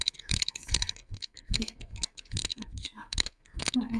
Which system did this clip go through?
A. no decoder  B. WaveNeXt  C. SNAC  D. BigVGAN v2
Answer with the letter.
C